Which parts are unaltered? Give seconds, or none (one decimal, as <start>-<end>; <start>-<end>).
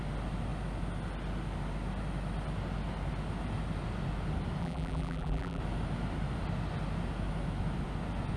0.0-4.6; 5.6-8.4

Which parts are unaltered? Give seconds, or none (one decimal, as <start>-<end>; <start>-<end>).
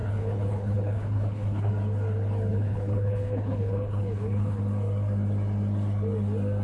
1.7-2.5; 4.6-6.6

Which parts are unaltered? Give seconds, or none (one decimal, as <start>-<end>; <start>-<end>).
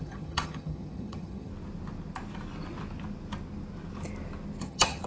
1.5-4.6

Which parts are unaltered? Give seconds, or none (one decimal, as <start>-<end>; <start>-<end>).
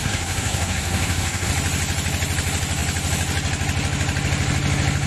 1.5-5.1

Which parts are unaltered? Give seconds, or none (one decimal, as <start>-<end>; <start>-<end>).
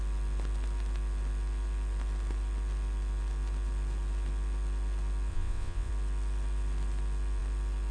0.0-5.3; 5.9-7.9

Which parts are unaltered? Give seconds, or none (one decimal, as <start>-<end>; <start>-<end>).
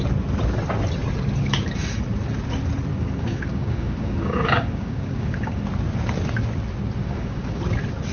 0.0-2.9; 5.6-7.0; 7.6-8.1